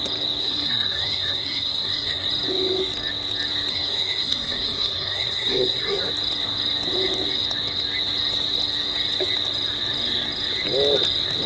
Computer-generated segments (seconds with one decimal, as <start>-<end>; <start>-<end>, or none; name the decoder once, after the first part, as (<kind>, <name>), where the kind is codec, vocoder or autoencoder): 0.4-2.3 (codec, SNAC); 3.7-6.0